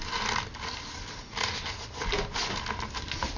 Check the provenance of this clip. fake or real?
real